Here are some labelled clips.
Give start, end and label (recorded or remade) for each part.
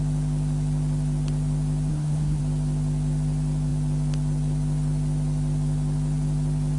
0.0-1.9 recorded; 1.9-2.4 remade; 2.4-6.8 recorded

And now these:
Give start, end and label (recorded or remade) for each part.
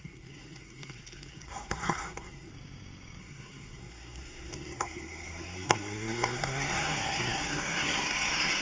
0.0-2.5 remade; 2.5-3.2 recorded; 3.2-8.6 remade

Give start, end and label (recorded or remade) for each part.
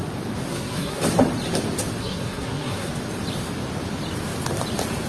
0.0-0.5 recorded; 0.5-1.0 remade; 1.0-2.0 recorded; 2.0-2.9 remade; 2.9-5.1 recorded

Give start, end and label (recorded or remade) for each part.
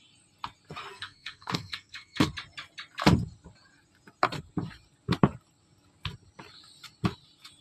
0.0-0.9 recorded; 0.9-2.3 remade; 2.3-7.6 recorded